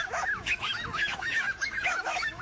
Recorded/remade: remade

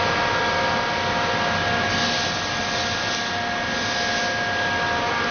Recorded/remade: recorded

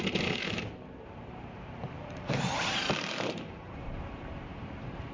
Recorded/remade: remade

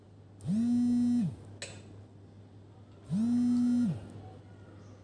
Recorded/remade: recorded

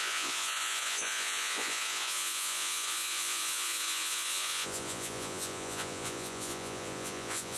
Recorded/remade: remade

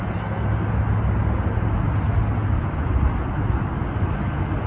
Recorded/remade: recorded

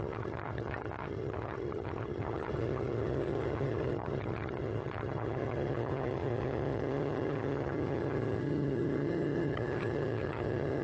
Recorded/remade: remade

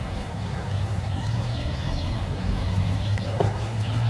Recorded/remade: remade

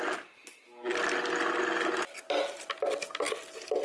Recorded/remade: recorded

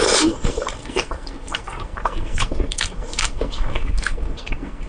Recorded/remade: remade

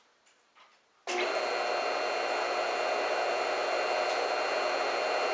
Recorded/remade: recorded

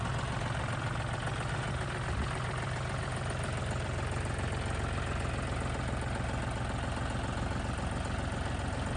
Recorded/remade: recorded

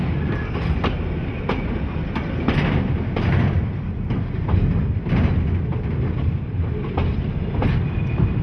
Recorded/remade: recorded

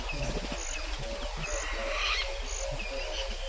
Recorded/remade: recorded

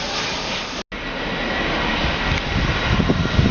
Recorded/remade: recorded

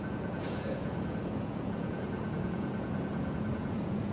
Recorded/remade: remade